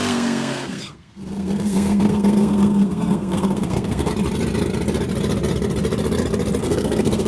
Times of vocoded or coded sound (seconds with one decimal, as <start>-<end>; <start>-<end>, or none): 0.0-4.1; 6.6-7.3